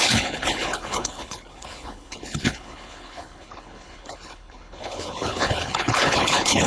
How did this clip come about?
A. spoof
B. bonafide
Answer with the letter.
A